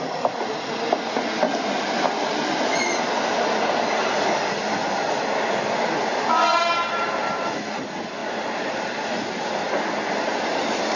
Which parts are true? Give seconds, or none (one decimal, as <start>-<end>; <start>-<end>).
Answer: 0.0-8.2; 8.7-11.0